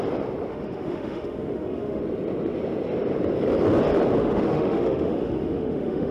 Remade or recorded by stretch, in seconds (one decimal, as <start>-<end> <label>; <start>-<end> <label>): 0.0-0.5 recorded; 0.5-2.0 remade; 2.0-4.2 recorded; 4.2-6.1 remade